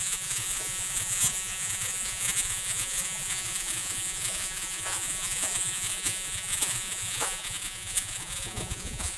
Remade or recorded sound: remade